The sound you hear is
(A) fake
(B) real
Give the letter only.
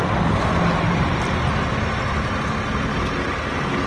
B